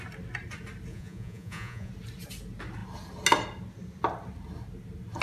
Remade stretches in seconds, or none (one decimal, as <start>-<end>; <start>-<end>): 0.9-1.9